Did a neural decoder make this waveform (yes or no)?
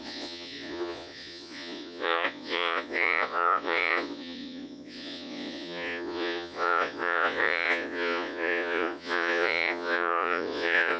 yes